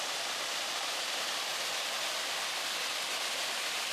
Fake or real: real